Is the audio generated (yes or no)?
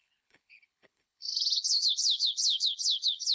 yes